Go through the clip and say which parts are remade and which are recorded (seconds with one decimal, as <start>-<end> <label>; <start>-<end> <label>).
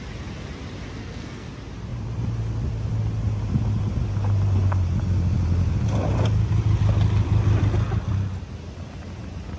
0.0-1.0 recorded; 1.0-1.5 remade; 1.5-9.6 recorded